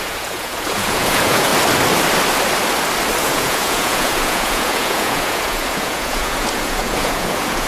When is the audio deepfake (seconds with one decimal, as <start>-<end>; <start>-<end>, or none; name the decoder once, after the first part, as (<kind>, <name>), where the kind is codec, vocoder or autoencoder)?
0.0-1.5 (vocoder, Vocos); 3.2-7.7